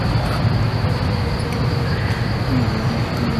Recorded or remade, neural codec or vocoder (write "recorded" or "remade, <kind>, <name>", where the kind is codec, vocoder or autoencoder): recorded